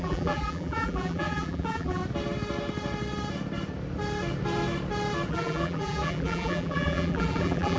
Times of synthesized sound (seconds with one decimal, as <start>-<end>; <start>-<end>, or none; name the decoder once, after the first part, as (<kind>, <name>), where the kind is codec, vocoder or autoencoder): 0.0-2.0 (vocoder, BigVGAN v2); 5.3-7.8